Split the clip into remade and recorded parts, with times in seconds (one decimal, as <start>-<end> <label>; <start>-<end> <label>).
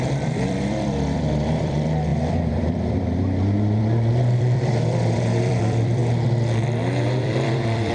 0.0-6.0 remade; 6.0-7.2 recorded; 7.2-7.9 remade